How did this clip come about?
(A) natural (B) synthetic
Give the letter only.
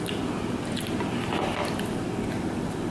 A